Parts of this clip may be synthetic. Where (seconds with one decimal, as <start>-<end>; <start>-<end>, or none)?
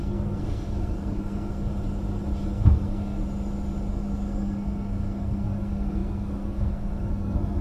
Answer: 0.0-1.7; 2.5-3.2; 3.9-7.6